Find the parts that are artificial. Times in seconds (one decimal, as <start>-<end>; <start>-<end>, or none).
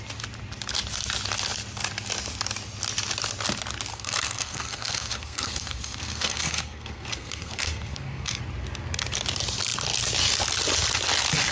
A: 3.9-8.4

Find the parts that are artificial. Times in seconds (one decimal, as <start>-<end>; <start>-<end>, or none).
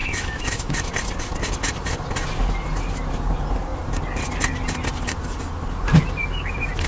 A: 0.0-0.9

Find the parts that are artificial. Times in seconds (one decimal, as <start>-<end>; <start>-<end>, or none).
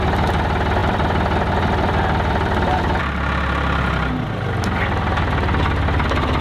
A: 0.8-3.0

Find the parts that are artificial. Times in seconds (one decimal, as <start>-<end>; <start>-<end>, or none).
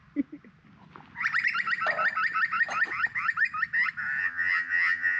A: 4.2-5.2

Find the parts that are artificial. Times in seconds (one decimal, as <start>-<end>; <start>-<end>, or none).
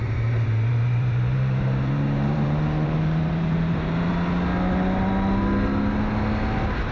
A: 0.0-4.1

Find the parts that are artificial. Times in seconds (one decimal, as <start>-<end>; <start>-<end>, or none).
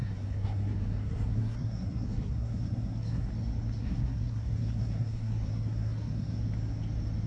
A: 0.0-3.3; 3.8-6.4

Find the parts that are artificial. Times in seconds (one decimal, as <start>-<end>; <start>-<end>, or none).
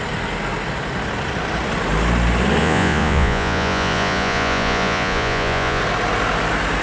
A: 2.6-5.8